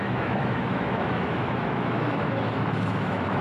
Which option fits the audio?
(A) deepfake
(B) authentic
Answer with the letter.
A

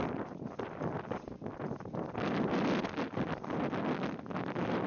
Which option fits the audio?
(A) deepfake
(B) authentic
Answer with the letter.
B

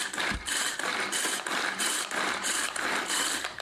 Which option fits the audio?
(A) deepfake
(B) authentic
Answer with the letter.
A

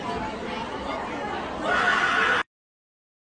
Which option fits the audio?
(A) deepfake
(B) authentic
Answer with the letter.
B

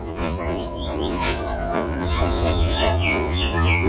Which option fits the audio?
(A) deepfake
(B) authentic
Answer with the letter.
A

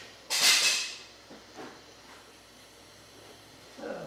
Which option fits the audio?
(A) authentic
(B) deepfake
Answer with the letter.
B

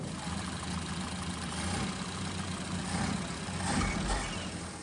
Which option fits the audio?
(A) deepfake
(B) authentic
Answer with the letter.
B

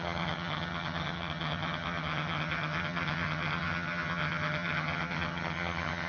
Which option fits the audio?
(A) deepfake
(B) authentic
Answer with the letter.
A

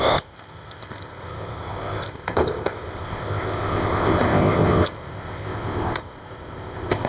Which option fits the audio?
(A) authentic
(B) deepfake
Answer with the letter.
B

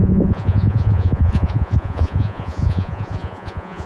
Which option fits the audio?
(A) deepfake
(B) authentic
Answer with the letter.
A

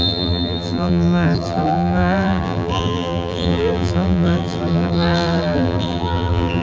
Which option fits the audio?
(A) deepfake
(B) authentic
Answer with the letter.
A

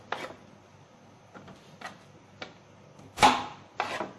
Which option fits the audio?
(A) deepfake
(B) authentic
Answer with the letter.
B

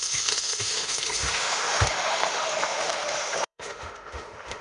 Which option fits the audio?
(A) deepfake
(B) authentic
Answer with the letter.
A